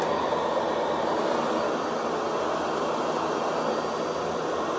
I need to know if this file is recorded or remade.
recorded